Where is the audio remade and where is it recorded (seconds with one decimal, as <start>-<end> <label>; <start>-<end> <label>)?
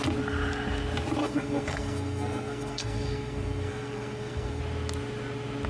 0.0-1.2 recorded; 1.2-4.6 remade; 4.6-5.7 recorded